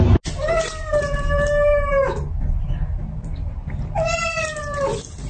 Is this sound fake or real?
real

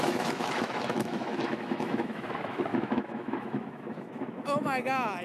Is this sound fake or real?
fake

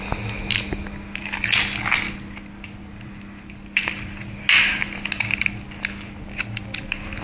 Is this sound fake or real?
real